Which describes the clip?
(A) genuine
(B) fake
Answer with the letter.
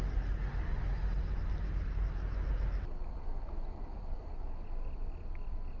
A